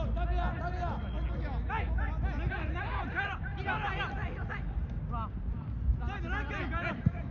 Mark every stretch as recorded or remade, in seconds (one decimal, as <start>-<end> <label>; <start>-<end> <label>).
0.0-7.3 recorded